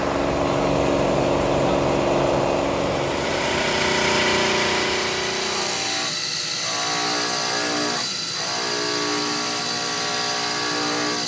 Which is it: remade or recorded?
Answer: recorded